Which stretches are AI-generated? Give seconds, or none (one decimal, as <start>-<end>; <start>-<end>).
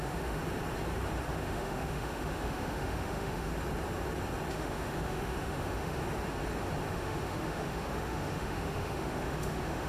0.0-0.4; 1.3-3.5; 4.5-6.0; 6.9-9.9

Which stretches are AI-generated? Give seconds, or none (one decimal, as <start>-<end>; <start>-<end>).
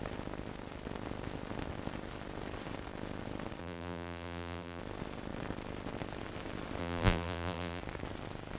3.6-4.8; 6.8-7.8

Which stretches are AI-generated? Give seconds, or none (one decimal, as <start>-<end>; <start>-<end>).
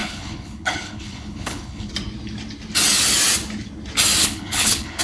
0.0-1.9; 4.2-5.0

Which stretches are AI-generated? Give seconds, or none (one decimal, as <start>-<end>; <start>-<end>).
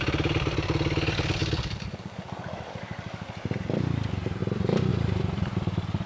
1.4-3.3